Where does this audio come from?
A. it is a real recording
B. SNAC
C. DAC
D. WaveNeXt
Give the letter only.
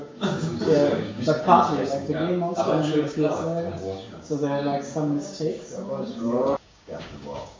C